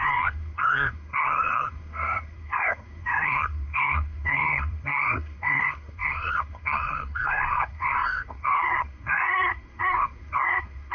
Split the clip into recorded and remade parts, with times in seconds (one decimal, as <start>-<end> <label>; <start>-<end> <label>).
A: 0.0-10.9 remade